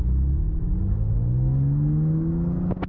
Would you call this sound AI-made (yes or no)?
no